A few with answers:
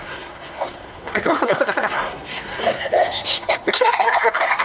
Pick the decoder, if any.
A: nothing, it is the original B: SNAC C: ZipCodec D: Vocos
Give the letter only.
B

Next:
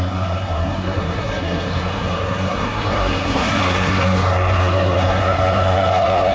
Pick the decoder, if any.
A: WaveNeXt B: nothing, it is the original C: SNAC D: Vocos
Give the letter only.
C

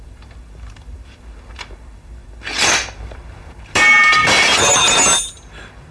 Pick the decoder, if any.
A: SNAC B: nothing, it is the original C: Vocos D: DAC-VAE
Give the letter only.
B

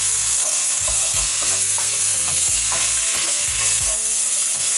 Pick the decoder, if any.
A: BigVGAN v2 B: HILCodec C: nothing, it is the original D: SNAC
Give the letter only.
D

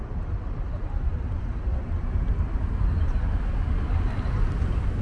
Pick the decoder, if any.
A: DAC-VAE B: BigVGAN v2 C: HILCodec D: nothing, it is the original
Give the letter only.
D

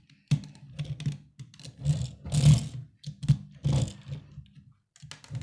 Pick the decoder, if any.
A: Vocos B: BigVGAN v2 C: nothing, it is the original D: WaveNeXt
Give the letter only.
C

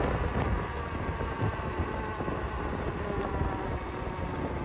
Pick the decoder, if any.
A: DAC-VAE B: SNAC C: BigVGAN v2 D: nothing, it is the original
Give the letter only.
D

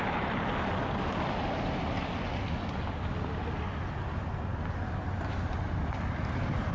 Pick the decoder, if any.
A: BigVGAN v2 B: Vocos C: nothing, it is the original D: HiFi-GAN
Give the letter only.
C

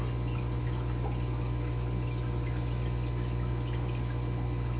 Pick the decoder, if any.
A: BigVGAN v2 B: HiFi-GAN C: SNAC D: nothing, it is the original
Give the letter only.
D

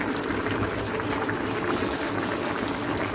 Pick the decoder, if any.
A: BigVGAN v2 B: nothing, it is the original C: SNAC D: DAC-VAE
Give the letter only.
B